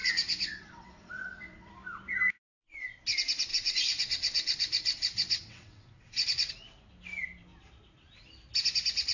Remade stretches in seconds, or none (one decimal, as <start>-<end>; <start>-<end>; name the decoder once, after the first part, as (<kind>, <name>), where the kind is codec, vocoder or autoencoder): 0.0-1.7 (vocoder, WaveNeXt); 3.5-6.5